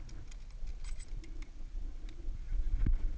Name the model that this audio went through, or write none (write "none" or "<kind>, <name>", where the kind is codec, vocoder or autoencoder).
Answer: none